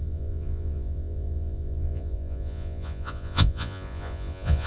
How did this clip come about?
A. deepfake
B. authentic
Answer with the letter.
A